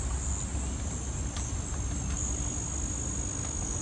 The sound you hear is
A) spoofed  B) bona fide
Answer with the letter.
B